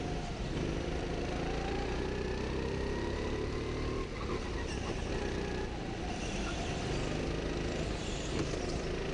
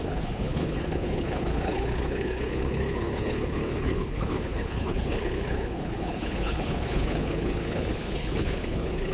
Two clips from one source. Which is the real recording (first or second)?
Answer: first